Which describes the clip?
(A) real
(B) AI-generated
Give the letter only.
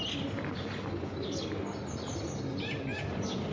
A